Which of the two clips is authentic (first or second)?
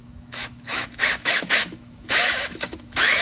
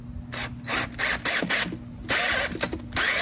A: second